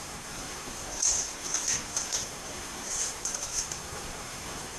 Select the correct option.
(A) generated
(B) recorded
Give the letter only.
A